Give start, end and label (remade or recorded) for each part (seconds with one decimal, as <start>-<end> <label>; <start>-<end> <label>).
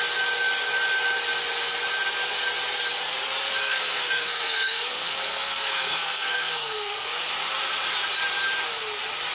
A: 0.0-3.6 recorded; 3.6-7.3 remade; 7.3-9.3 recorded